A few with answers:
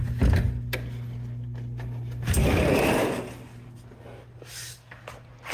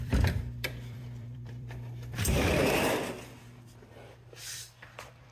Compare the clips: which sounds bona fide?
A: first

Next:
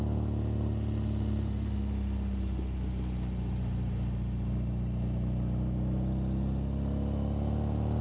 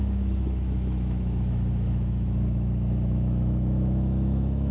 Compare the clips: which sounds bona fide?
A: first